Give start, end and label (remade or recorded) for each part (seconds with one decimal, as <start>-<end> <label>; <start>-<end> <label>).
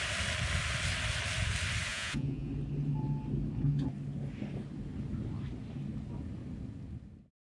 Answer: 0.0-1.9 recorded; 1.9-2.5 remade; 2.5-7.5 recorded